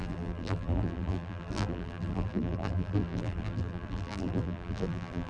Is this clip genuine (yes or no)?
no